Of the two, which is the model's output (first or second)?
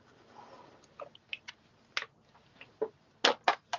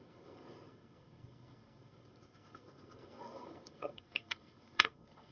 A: second